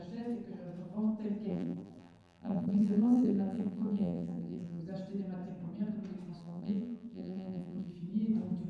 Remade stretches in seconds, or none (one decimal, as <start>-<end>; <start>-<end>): 1.5-4.8; 6.4-7.9